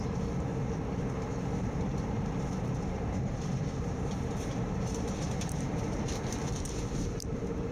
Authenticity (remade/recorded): remade